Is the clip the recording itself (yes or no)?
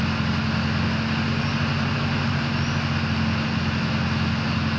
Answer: yes